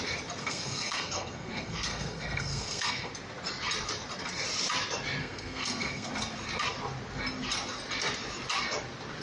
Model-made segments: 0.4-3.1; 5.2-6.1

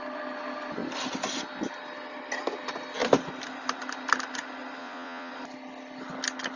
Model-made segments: 4.8-5.3

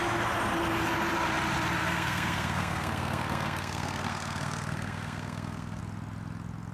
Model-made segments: 1.8-5.8

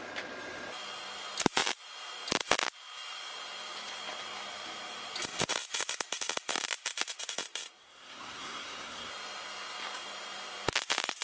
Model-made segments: 7.8-9.1

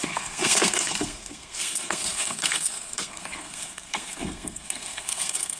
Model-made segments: 0.0-5.6

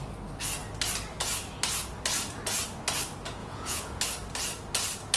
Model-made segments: 3.4-4.0

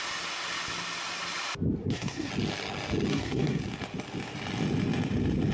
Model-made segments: 1.8-2.3; 3.1-3.6